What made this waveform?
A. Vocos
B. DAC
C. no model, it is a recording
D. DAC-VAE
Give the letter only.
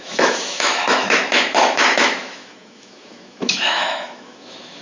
D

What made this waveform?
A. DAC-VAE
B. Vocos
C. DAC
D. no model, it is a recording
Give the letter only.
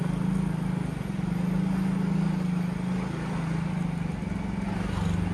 D